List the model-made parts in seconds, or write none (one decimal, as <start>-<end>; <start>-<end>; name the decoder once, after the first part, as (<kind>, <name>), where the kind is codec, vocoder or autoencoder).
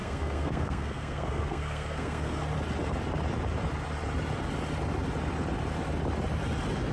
0.0-2.4 (codec, SNAC)